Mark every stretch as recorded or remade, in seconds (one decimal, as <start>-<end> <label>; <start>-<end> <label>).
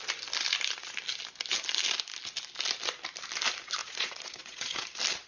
0.0-3.8 recorded; 3.8-4.8 remade; 4.8-5.3 recorded